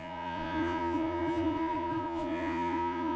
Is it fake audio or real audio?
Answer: fake